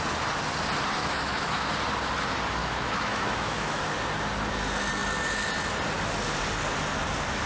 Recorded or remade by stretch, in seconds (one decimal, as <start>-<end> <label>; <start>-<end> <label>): 0.0-1.0 recorded; 1.0-1.7 remade; 1.7-2.6 recorded; 2.6-3.8 remade; 3.8-7.5 recorded